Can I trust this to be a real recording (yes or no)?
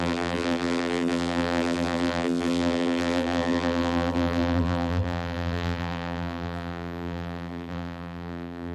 no